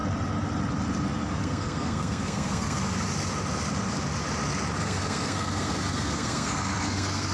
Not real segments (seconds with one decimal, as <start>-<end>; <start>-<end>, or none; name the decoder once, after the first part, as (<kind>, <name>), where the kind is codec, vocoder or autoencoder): 1.4-2.8 (codec, SNAC); 4.8-7.3